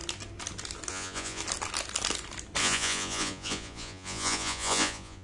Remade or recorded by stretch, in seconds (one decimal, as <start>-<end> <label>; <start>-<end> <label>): 0.0-0.9 recorded; 0.9-1.4 remade; 1.4-2.6 recorded; 2.6-5.2 remade